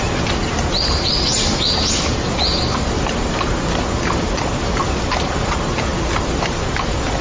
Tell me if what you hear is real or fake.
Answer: real